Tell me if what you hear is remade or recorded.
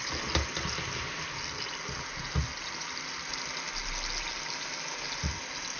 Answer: recorded